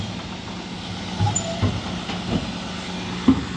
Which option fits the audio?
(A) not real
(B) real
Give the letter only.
B